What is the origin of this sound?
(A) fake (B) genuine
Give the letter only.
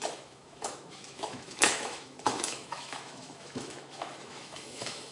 A